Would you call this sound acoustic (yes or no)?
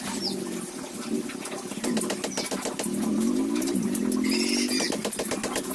yes